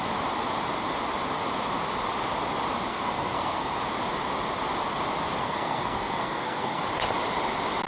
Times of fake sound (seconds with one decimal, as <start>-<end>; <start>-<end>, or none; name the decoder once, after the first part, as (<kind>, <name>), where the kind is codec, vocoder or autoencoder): 2.9-3.8 (codec, SNAC); 5.4-6.8